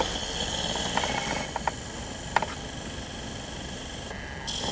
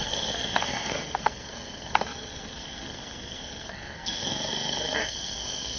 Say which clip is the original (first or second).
first